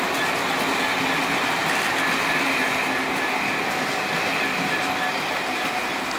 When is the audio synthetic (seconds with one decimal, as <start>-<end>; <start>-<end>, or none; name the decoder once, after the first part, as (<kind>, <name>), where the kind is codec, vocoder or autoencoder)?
none